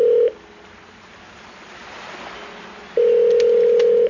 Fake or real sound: real